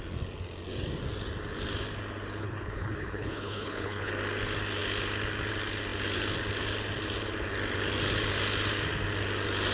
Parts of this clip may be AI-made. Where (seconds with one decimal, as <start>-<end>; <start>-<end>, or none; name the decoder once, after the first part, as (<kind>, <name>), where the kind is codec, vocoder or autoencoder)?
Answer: 2.4-4.1 (codec, HILCodec)